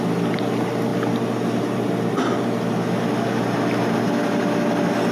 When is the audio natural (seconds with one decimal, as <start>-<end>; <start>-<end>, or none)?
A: 0.0-5.1